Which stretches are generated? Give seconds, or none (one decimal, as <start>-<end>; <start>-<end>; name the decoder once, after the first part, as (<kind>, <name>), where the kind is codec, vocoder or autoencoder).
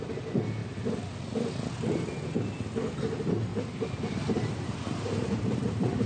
3.5-6.1 (vocoder, BigVGAN v2)